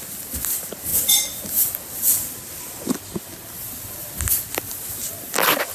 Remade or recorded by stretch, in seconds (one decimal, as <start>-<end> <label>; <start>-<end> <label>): 0.0-5.7 recorded